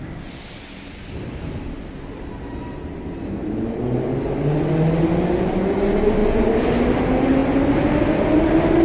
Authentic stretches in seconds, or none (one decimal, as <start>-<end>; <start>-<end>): 0.0-8.8